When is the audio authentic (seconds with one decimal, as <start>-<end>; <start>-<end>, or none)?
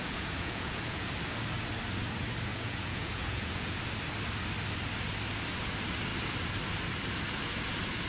1.1-2.5; 3.8-8.1